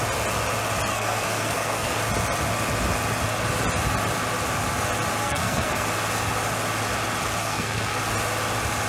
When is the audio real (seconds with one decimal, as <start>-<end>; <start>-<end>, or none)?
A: 0.0-0.9; 2.0-5.2; 5.9-7.4; 8.0-8.9